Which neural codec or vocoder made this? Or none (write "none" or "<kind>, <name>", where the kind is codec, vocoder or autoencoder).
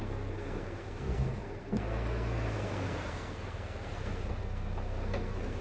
codec, SNAC